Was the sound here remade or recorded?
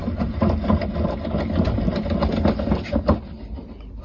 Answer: recorded